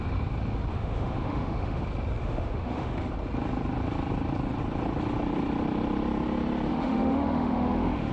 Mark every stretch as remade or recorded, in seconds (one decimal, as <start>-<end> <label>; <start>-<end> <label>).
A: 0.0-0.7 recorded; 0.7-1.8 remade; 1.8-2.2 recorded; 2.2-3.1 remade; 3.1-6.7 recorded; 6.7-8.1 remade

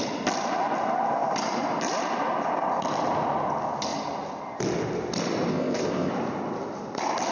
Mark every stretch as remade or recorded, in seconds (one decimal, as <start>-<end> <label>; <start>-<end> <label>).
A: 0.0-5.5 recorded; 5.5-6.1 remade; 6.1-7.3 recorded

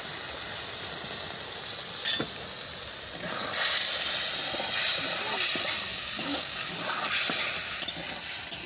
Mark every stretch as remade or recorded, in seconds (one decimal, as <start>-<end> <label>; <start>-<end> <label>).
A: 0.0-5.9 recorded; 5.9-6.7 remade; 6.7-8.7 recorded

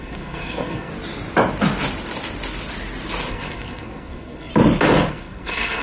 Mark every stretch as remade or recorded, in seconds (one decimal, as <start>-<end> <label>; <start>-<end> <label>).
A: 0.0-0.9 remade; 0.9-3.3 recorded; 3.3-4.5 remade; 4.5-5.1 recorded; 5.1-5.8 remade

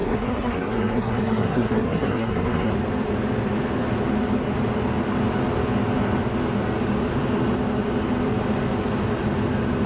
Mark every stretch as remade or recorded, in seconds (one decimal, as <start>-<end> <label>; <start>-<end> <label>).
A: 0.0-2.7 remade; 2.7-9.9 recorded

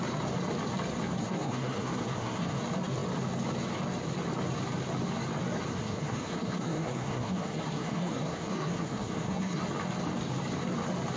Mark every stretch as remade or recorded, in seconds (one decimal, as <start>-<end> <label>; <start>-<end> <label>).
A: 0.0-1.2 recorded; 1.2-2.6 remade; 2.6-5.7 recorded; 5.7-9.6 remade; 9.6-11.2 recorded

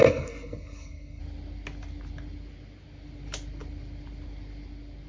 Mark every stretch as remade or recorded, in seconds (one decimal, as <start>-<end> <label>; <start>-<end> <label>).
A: 0.0-1.2 remade; 1.2-5.1 recorded

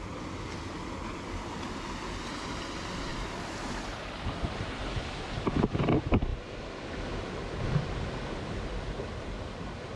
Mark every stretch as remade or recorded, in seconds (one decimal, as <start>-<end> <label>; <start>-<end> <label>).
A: 0.0-3.1 recorded; 3.1-3.7 remade; 3.7-10.0 recorded